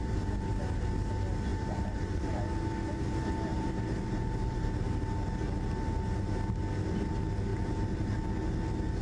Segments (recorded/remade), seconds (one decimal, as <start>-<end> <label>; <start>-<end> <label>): 0.0-1.5 recorded; 1.5-2.4 remade; 2.4-3.5 recorded; 3.5-4.7 remade; 4.7-7.5 recorded; 7.5-8.3 remade; 8.3-9.0 recorded